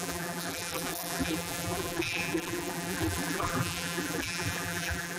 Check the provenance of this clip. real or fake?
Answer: fake